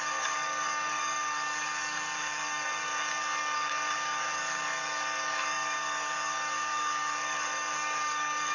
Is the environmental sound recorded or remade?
remade